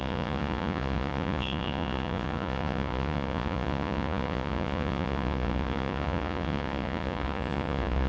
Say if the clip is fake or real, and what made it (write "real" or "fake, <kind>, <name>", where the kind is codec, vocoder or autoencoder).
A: fake, vocoder, Vocos